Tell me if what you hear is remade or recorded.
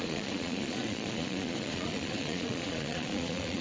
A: remade